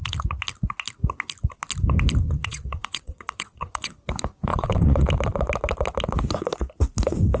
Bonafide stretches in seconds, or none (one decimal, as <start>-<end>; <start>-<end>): 0.0-2.4; 4.0-4.5; 5.1-7.4